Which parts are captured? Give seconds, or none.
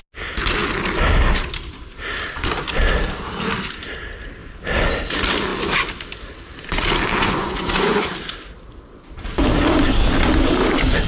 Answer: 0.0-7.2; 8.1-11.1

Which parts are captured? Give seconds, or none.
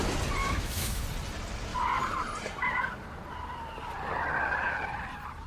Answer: 0.0-0.4; 1.0-5.5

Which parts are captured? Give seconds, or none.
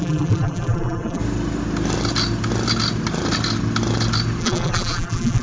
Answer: 1.2-4.4